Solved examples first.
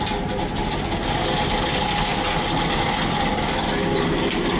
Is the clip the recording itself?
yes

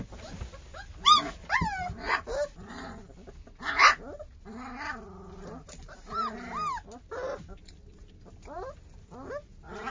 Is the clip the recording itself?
yes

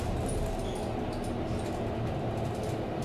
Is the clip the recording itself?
yes